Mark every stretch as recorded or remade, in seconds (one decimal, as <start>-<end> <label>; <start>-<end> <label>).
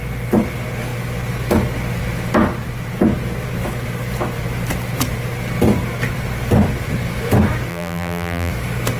0.0-7.7 recorded; 7.7-8.5 remade; 8.5-9.0 recorded